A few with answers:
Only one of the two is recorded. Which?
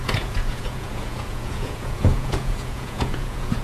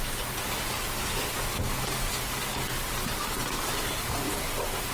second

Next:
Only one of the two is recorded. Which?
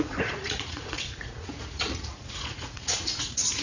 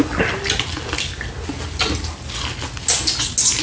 second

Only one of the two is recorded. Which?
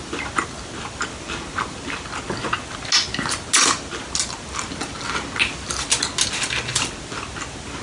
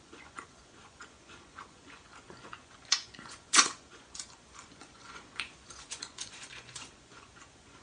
first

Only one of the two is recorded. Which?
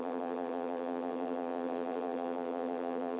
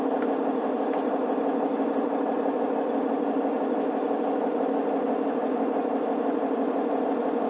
second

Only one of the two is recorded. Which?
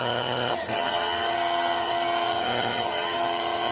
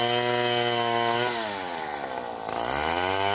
second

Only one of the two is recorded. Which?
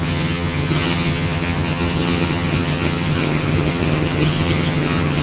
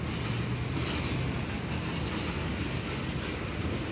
second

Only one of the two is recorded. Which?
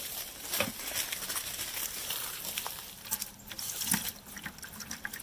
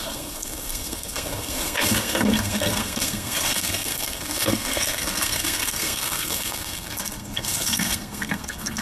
first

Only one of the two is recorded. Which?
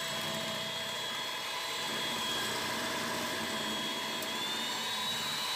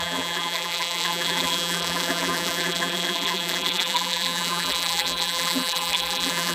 first